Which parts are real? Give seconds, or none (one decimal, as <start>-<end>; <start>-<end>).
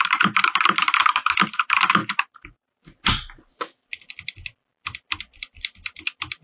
0.0-2.0; 2.8-6.4